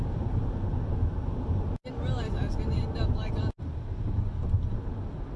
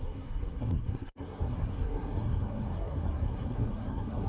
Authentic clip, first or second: first